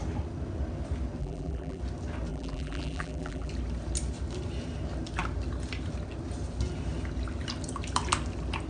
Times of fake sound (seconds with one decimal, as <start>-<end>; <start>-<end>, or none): 1.2-1.8; 2.3-3.5